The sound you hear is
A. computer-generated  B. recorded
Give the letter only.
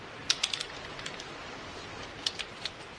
B